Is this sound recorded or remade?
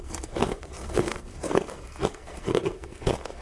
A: remade